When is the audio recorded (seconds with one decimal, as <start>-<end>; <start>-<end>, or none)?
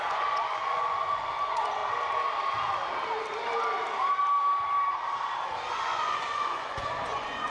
1.8-5.7